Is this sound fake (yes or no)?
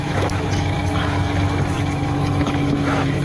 yes